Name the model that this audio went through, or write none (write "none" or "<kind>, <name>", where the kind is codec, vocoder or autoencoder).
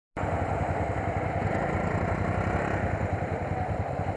none